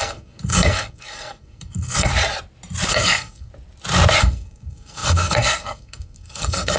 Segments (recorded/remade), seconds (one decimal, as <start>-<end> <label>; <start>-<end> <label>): 0.0-2.1 remade; 2.1-2.9 recorded; 2.9-3.5 remade; 3.5-4.2 recorded; 4.2-6.8 remade